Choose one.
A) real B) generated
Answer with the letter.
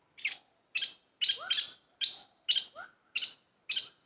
A